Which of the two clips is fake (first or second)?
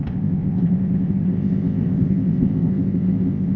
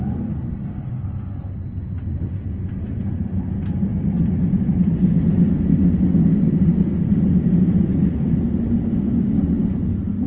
first